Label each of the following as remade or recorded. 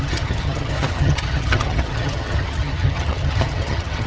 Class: remade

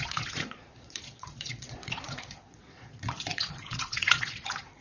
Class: remade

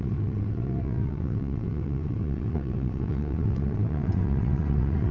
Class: remade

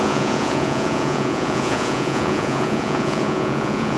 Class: remade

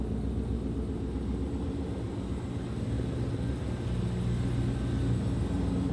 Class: recorded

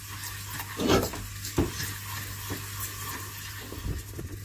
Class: recorded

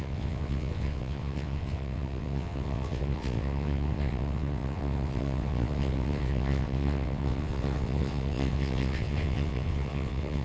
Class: remade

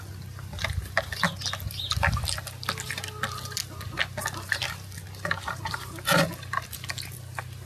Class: recorded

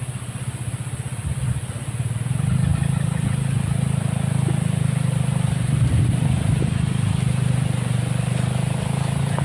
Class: recorded